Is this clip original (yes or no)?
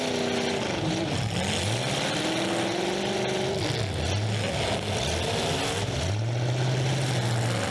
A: yes